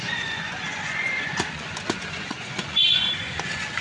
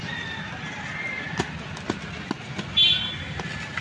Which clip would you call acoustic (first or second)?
second